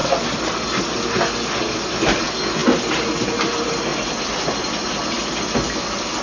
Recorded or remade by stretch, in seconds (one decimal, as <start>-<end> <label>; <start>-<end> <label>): 0.0-6.2 recorded